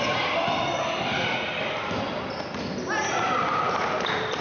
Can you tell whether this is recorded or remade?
recorded